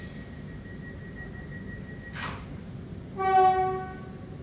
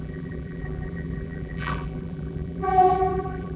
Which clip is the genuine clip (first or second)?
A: first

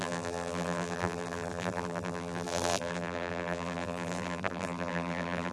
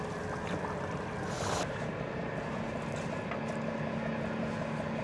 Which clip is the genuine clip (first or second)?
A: second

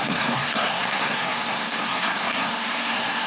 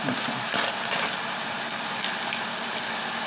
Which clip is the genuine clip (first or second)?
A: second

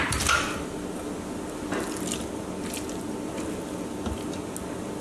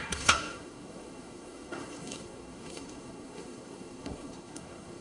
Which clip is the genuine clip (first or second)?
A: first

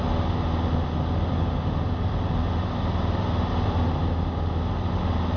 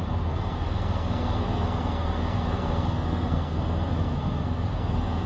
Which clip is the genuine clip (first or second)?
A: first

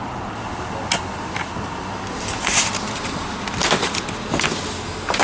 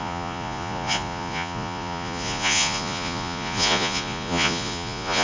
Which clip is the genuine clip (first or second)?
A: first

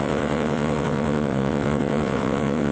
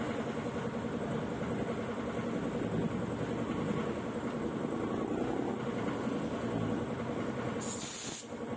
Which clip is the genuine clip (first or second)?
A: second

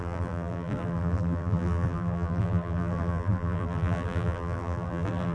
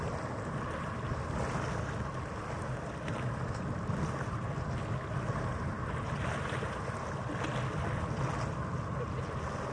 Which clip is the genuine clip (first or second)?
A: second